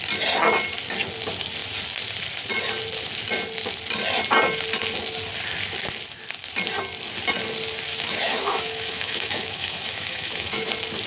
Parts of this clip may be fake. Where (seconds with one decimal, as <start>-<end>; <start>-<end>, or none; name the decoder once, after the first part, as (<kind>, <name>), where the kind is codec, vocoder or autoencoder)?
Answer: 7.9-10.7 (autoencoder, DAC-VAE)